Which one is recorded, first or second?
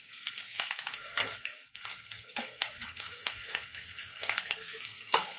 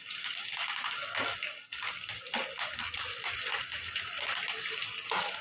second